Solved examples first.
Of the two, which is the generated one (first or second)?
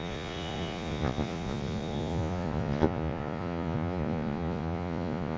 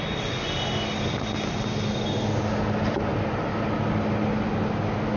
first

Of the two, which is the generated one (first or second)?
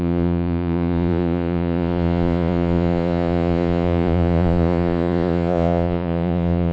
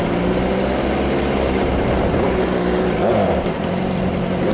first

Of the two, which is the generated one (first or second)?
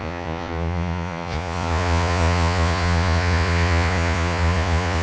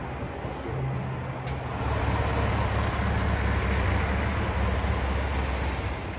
first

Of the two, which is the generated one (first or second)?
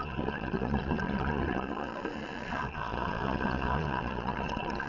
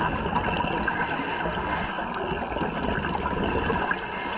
first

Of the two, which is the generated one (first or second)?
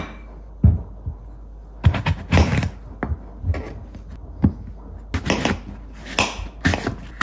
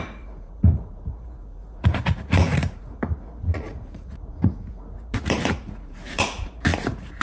second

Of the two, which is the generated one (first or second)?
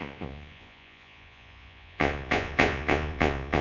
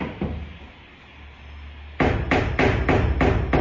first